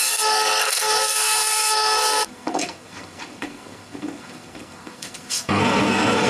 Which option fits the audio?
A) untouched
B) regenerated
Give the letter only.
B